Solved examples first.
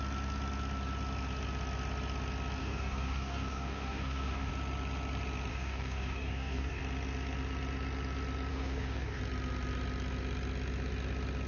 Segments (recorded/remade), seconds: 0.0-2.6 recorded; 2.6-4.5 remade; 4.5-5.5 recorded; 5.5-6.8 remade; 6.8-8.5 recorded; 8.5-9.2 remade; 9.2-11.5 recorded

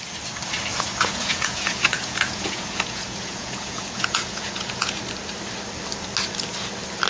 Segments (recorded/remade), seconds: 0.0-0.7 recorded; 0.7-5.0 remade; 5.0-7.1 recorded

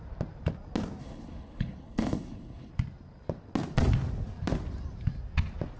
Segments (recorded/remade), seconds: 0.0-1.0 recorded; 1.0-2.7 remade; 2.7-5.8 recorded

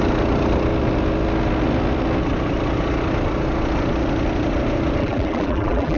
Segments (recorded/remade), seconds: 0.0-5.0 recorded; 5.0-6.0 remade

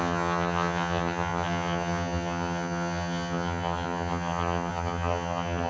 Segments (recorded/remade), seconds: 0.0-5.7 remade

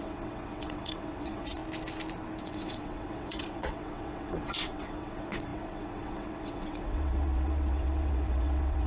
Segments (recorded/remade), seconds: 0.0-1.6 remade; 1.6-2.4 recorded; 2.4-8.9 remade